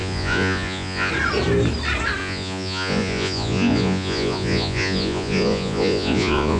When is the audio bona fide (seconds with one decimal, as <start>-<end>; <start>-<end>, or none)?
1.1-2.2